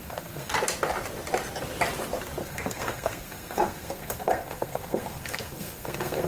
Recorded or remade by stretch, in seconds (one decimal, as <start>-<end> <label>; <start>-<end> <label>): 0.0-0.5 remade; 0.5-2.4 recorded; 2.4-6.3 remade